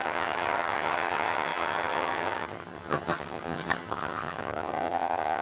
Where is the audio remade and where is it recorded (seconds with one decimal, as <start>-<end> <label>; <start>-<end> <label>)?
0.0-5.4 remade